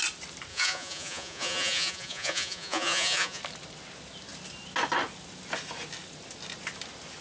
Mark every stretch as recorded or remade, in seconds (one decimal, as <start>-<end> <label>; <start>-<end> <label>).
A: 0.0-0.5 recorded; 0.5-3.4 remade; 3.4-7.2 recorded